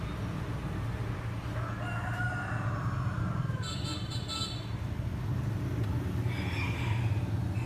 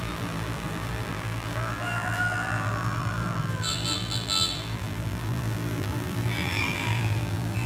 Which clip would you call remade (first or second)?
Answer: second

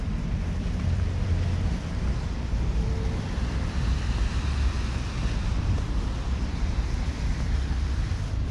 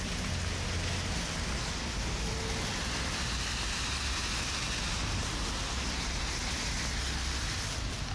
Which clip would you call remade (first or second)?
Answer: first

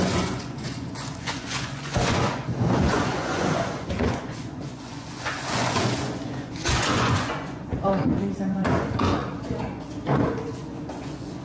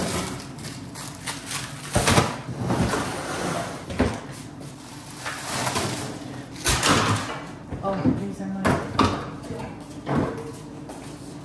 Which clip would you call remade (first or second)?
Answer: first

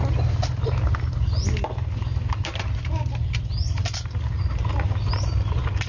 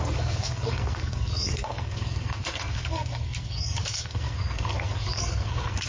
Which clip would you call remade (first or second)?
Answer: second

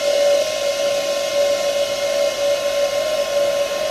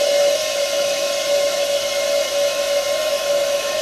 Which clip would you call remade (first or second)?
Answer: second